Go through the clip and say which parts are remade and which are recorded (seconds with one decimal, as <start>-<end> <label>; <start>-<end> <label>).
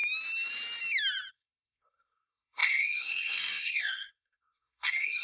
0.0-1.3 recorded; 1.3-5.2 remade